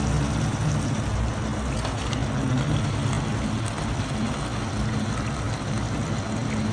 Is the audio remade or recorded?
recorded